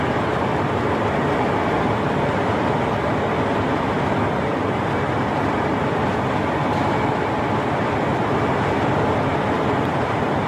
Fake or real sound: fake